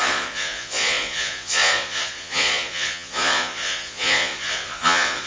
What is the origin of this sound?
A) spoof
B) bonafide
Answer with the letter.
A